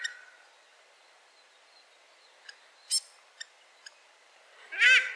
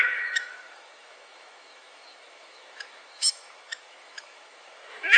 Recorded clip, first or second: first